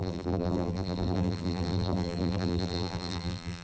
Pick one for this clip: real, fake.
fake